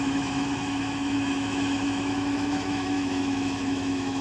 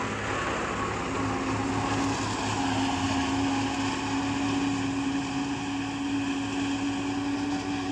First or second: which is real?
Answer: second